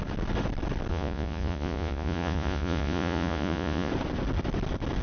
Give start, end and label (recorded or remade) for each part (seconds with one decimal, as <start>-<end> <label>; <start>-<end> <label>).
0.0-0.9 recorded; 0.9-3.9 remade; 3.9-5.0 recorded